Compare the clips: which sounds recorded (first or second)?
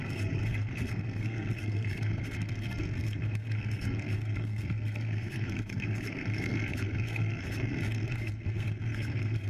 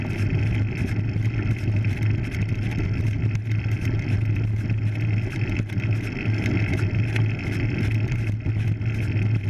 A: second